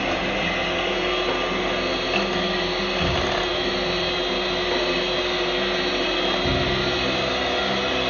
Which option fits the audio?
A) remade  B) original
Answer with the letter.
B